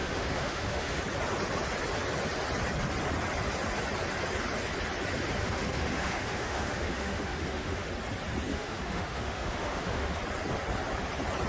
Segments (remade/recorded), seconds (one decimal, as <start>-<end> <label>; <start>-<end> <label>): 0.0-1.0 remade; 1.0-5.4 recorded; 5.4-7.9 remade; 7.9-8.5 recorded; 8.5-10.2 remade; 10.2-11.5 recorded